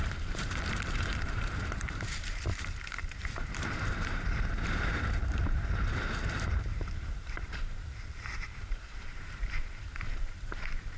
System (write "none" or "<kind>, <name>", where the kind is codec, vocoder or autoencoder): vocoder, BigVGAN v2